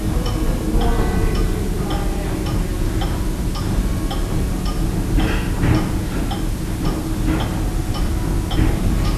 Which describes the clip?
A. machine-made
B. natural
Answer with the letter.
B